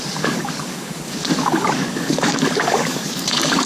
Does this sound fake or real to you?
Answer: fake